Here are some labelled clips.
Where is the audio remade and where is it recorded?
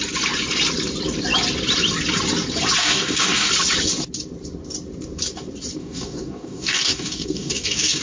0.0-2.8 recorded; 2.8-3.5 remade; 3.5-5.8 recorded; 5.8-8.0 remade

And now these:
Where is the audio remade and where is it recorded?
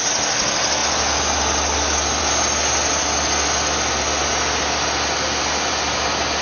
0.0-6.4 recorded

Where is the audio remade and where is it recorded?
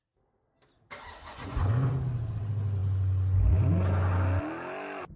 0.0-1.3 recorded; 1.3-1.9 remade; 1.9-5.2 recorded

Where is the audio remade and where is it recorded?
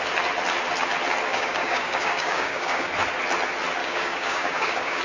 0.0-1.3 recorded; 1.3-2.9 remade; 2.9-3.8 recorded; 3.8-5.0 remade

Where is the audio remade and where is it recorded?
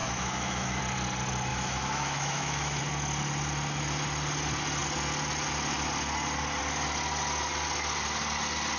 0.0-0.8 remade; 0.8-1.5 recorded; 1.5-2.8 remade; 2.8-8.8 recorded